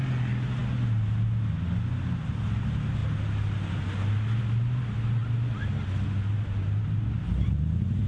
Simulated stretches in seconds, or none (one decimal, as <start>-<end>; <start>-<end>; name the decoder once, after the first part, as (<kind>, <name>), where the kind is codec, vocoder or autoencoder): none